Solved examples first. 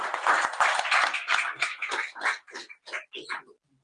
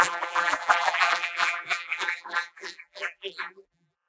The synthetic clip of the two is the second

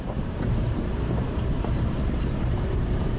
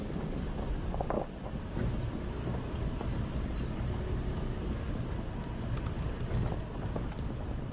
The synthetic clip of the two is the first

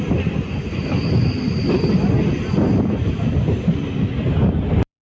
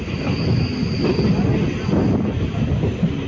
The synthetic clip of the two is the first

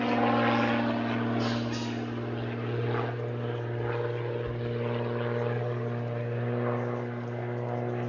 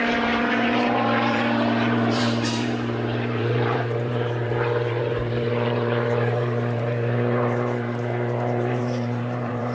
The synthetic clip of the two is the second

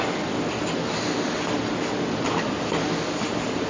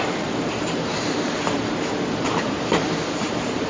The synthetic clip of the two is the second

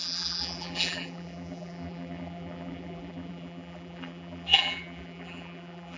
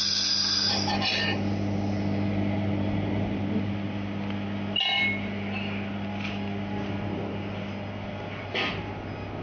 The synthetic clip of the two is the first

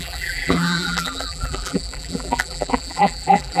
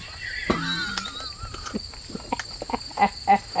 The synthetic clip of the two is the first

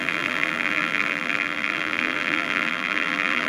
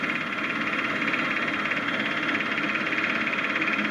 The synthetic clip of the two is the first